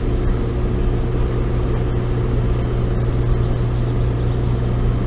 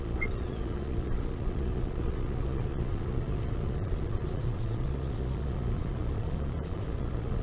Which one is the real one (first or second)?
first